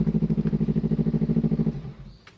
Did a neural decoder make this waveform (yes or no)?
no